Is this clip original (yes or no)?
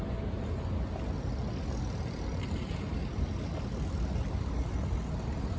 yes